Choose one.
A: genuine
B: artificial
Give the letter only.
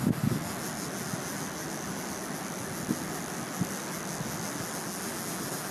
A